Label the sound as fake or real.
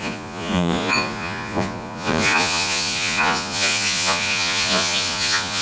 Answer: fake